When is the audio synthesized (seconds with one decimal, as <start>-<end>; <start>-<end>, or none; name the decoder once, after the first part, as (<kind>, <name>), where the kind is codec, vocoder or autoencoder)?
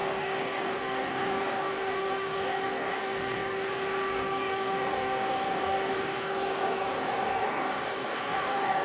0.0-8.8 (codec, DAC)